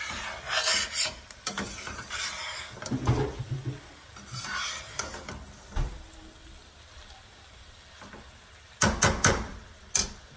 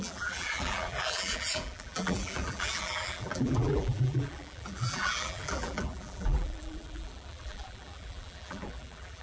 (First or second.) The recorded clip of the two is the first